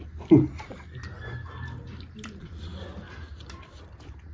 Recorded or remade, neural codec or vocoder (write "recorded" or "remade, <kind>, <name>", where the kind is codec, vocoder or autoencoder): recorded